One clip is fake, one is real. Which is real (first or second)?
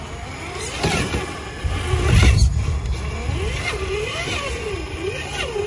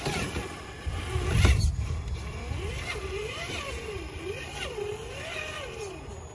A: first